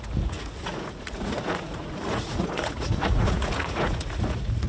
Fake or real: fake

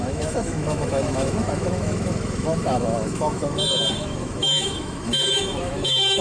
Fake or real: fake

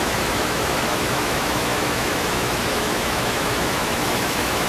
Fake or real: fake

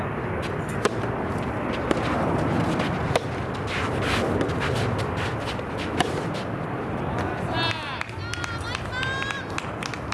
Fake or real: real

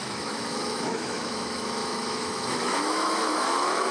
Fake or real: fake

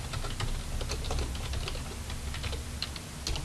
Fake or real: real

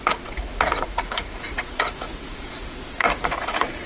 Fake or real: fake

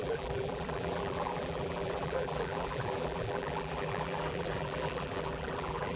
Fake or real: fake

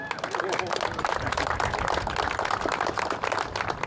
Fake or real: real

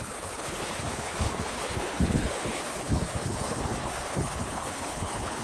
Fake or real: fake